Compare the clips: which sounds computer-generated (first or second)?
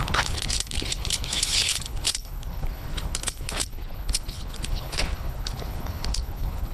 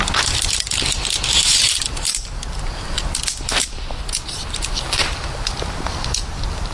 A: first